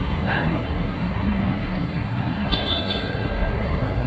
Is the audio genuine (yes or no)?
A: no